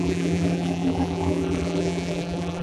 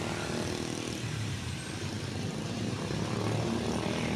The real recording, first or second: second